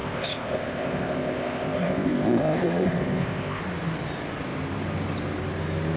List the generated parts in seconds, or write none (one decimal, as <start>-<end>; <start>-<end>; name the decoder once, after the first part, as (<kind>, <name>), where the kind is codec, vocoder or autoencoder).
0.0-3.6 (codec, ZipCodec)